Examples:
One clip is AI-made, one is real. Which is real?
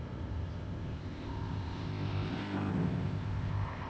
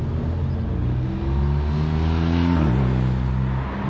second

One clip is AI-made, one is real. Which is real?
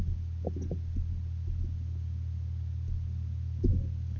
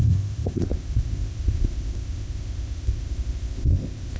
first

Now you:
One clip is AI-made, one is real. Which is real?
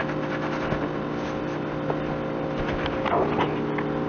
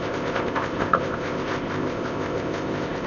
first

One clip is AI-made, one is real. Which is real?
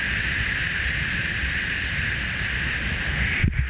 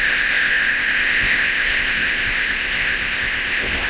first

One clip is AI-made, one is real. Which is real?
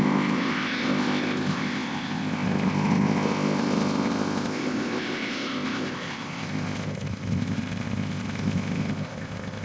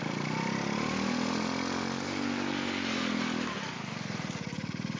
second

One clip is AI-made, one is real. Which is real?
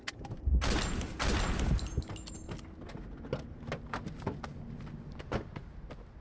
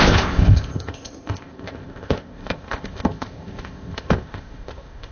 first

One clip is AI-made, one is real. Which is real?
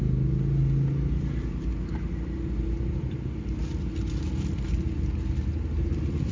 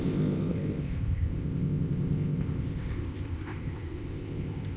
first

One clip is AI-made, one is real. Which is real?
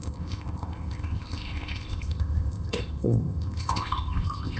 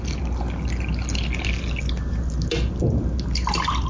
second